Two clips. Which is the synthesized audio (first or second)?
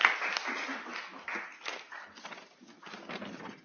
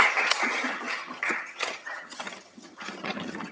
second